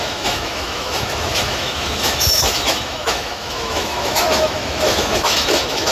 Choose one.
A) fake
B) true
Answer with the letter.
A